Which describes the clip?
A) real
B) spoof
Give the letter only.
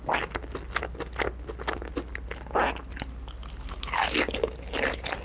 A